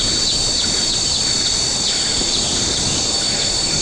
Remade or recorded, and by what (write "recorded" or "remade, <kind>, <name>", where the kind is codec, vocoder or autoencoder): recorded